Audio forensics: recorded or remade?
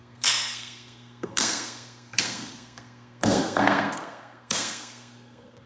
remade